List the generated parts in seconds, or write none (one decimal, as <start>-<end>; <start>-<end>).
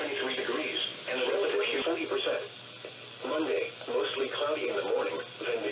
none